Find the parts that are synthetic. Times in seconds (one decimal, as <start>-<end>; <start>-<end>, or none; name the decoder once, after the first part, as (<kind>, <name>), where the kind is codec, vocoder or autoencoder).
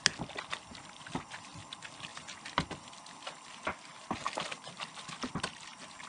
none